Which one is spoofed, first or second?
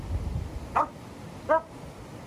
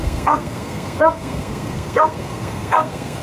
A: second